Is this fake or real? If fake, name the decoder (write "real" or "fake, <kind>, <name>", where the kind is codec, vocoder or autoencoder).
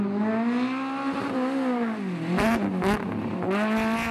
real